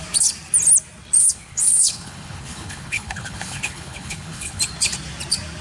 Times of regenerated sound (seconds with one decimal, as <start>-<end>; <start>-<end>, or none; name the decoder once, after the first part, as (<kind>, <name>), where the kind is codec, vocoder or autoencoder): 1.2-4.6 (codec, HILCodec)